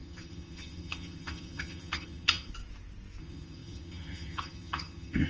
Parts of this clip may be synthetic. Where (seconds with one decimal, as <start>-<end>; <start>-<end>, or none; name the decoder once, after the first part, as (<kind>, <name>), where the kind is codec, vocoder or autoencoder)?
0.0-2.5 (vocoder, HiFi-GAN); 3.2-5.3